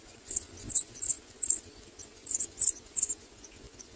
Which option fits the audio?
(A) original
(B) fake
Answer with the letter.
B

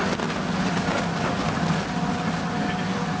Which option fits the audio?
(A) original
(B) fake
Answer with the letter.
A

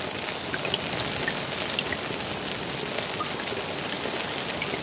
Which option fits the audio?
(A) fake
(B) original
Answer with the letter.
B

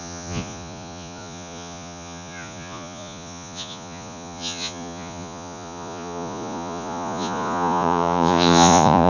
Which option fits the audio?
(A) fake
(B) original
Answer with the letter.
A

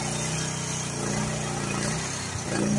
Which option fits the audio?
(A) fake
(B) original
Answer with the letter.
B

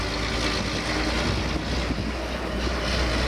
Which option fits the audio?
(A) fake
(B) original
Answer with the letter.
B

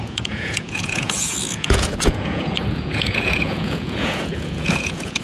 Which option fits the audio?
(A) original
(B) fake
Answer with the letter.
B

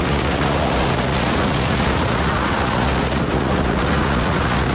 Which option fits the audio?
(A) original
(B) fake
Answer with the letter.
B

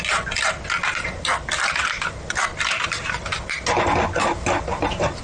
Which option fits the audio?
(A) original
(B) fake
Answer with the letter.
A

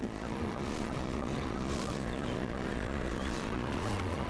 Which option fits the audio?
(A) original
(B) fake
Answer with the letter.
B